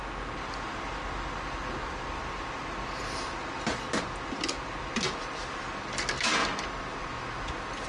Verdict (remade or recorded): recorded